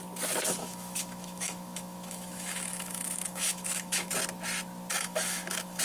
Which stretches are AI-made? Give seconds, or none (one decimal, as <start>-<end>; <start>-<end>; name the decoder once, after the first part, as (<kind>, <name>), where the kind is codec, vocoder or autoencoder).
0.6-4.1 (autoencoder, DAC-VAE); 4.9-5.8